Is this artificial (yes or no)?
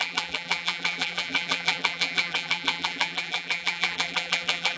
yes